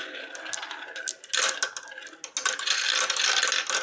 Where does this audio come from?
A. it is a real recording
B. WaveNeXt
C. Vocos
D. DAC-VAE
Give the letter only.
A